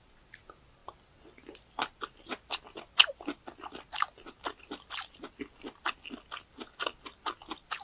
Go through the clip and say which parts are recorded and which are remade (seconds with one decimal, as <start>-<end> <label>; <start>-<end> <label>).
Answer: 0.0-7.8 recorded